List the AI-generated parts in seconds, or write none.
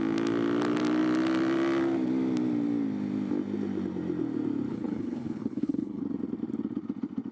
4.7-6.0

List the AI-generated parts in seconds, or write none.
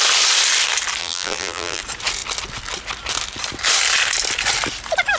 1.0-1.8